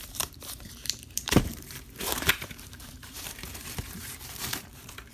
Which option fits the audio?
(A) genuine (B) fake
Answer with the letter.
B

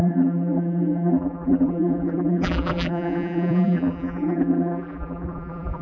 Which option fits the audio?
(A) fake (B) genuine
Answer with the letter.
A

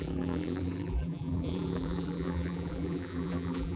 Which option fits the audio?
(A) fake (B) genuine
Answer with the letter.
A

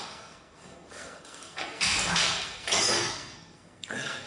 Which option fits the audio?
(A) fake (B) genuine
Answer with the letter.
A